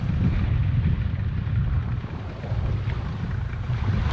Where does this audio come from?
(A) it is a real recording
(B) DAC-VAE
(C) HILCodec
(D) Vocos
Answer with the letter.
A